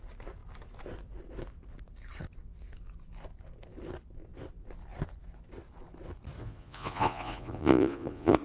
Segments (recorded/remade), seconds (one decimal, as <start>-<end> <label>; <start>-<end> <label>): 0.0-6.4 recorded; 6.4-8.4 remade

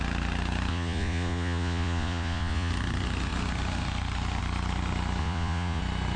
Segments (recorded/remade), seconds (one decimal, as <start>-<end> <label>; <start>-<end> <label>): 0.0-0.7 recorded; 0.7-2.7 remade; 2.7-5.2 recorded; 5.2-5.8 remade; 5.8-6.2 recorded

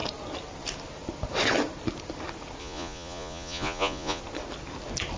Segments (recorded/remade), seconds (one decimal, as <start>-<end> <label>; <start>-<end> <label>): 0.0-2.6 recorded; 2.6-4.2 remade; 4.2-5.2 recorded

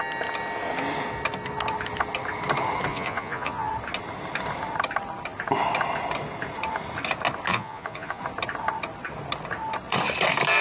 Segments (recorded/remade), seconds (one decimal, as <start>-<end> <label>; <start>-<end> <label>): 0.0-2.9 recorded; 2.9-3.7 remade; 3.7-7.5 recorded; 7.5-8.2 remade; 8.2-10.6 recorded